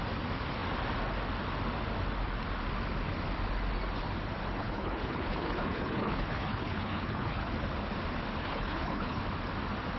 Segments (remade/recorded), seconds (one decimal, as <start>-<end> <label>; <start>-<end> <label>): 0.0-4.6 recorded; 4.6-7.5 remade; 7.5-8.4 recorded; 8.4-9.2 remade; 9.2-10.0 recorded

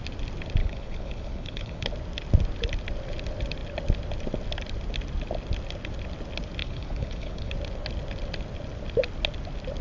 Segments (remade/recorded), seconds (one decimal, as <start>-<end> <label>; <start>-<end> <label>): 0.0-0.6 recorded; 0.6-1.9 remade; 1.9-6.6 recorded; 6.6-7.5 remade; 7.5-9.8 recorded

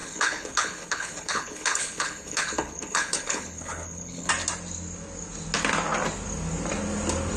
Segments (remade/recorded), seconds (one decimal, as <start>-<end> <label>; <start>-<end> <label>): 0.0-4.3 remade; 4.3-7.4 recorded

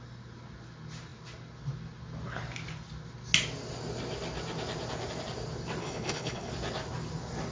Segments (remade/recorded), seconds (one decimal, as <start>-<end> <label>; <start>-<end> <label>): 0.0-5.8 recorded; 5.8-6.5 remade; 6.5-7.5 recorded

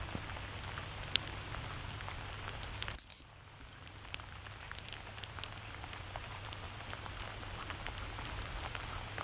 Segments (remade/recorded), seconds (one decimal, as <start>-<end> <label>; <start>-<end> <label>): 0.0-9.2 recorded

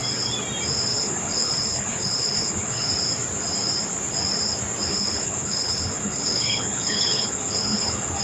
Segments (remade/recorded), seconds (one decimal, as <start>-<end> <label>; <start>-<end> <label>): 0.0-0.9 recorded; 0.9-2.9 remade; 2.9-4.9 recorded; 4.9-8.2 remade